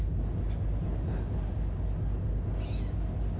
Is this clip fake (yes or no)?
no